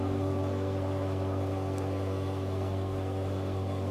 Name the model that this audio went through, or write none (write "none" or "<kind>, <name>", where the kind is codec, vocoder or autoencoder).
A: codec, SNAC